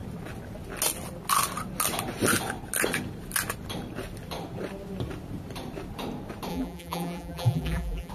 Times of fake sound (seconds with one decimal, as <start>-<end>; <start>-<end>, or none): 6.5-8.1